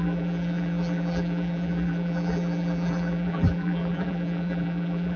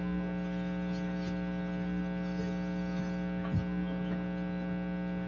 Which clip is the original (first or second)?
second